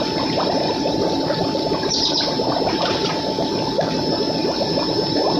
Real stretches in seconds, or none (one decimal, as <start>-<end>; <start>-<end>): 0.0-5.4